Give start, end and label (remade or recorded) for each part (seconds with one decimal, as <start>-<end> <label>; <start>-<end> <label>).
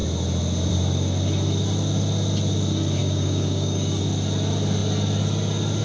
0.0-3.0 recorded; 3.0-4.0 remade; 4.0-5.8 recorded